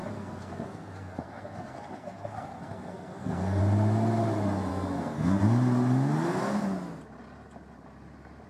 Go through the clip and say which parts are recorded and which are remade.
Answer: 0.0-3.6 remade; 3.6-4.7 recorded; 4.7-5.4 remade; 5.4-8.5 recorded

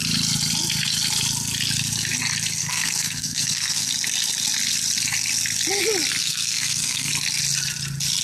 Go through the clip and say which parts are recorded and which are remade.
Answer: 0.0-2.6 recorded; 2.6-3.9 remade; 3.9-6.2 recorded; 6.2-7.1 remade; 7.1-8.2 recorded

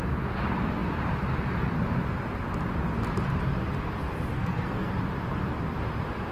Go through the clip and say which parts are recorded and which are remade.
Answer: 0.0-4.3 recorded; 4.3-4.9 remade; 4.9-6.3 recorded

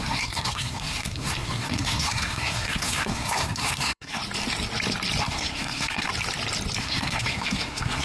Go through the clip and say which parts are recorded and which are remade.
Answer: 0.0-4.2 remade; 4.2-5.2 recorded; 5.2-6.1 remade; 6.1-6.8 recorded; 6.8-8.0 remade